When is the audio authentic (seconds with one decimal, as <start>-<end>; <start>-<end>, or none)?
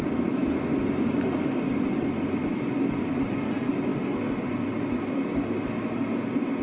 0.0-6.6